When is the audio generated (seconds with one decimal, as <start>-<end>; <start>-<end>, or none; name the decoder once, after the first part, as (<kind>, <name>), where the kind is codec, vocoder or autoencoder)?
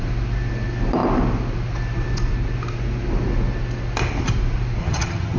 4.8-5.4 (vocoder, HiFi-GAN)